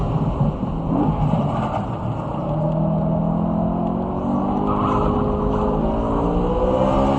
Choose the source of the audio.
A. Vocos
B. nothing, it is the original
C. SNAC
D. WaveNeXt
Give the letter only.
B